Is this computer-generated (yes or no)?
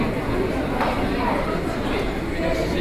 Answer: no